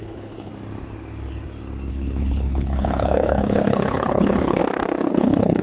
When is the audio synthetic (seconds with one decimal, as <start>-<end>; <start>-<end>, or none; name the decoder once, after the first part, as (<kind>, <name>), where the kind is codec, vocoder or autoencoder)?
0.0-0.5 (codec, HILCodec); 1.9-4.6; 5.1-5.6